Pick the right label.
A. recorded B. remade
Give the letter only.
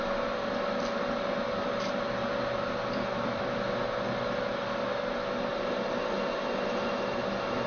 A